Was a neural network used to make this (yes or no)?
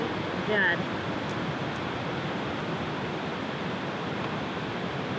no